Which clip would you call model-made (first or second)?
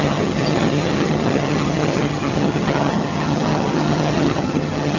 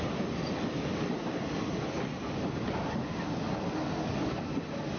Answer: first